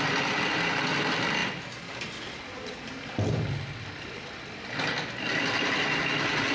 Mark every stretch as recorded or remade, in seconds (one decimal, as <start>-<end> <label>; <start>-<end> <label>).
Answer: 0.0-6.5 recorded